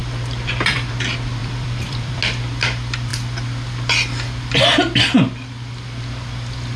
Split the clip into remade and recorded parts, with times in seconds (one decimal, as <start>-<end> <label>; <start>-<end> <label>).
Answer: 0.0-0.9 remade; 0.9-1.4 recorded; 1.4-2.2 remade; 2.2-6.8 recorded